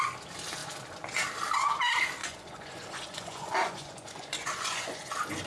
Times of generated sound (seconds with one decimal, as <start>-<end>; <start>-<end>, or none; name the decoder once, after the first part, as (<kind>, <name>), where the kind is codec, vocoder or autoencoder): 2.2-5.0 (vocoder, Vocos)